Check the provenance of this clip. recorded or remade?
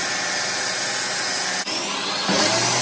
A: recorded